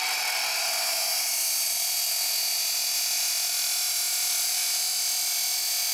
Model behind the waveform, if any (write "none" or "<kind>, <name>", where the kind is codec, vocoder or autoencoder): none